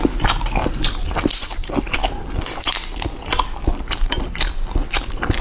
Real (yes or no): yes